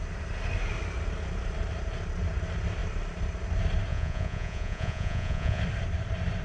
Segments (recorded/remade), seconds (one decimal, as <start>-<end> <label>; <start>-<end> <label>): 0.0-3.9 recorded; 3.9-5.6 remade; 5.6-6.4 recorded